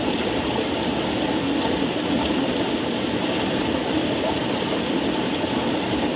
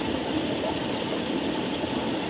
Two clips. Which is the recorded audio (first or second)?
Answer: first